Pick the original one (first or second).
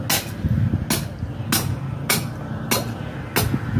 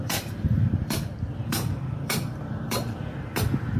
first